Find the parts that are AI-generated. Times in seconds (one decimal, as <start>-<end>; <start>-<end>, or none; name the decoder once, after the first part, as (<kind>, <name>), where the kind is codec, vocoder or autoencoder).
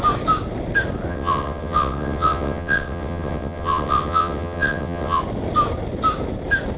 1.1-5.2 (vocoder, WaveNeXt)